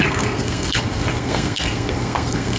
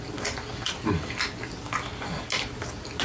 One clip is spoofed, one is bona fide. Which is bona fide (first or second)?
second